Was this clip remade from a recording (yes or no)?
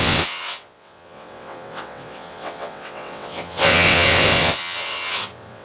yes